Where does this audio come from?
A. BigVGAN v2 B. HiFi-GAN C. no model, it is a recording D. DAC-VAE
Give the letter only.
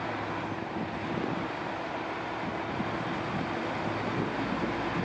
C